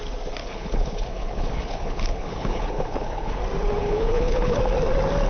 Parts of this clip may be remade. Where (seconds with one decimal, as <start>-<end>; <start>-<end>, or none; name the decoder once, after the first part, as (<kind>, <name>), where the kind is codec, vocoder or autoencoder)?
0.4-3.4 (codec, HILCodec); 3.8-4.6